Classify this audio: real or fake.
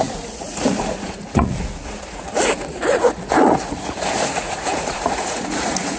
fake